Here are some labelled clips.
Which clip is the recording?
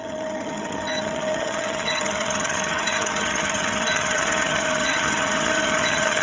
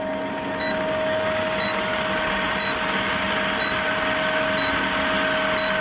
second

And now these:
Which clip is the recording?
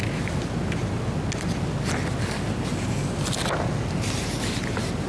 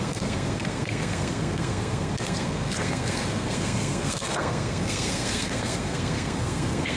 first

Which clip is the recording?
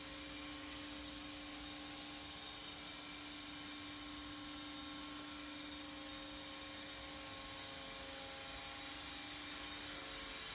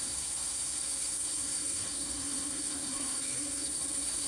first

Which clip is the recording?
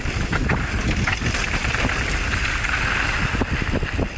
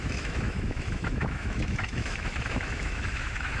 first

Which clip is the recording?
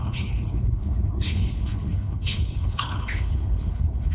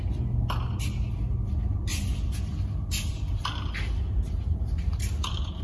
second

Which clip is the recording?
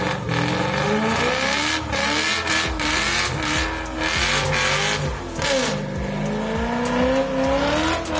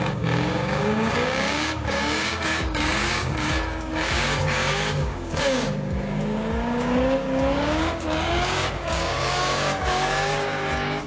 first